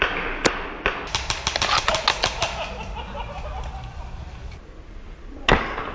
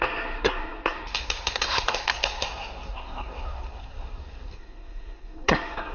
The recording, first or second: first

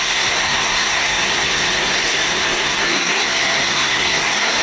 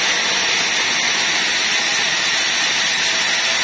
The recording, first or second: second